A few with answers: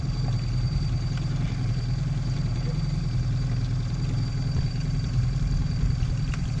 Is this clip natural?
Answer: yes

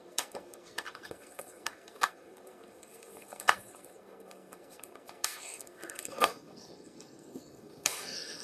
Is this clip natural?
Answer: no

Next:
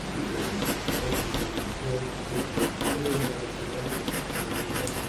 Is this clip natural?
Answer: yes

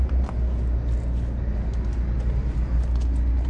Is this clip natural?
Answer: yes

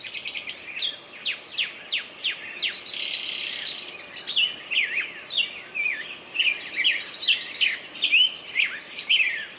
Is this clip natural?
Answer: yes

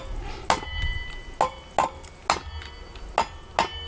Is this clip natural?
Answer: yes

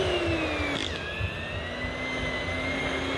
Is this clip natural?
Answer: yes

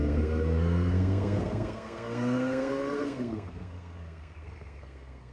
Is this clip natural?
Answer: no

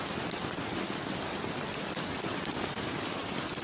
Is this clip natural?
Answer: yes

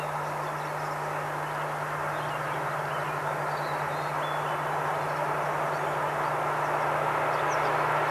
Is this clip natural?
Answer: yes